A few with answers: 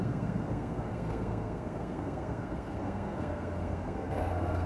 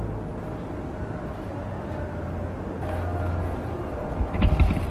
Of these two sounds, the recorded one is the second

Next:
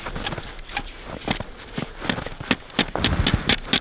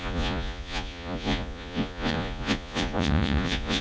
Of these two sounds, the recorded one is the first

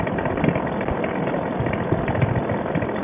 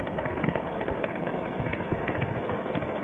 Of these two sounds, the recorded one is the first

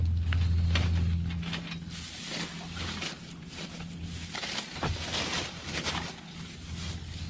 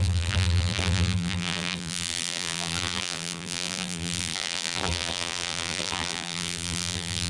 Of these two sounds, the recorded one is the first